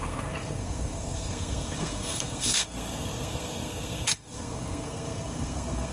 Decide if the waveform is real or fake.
fake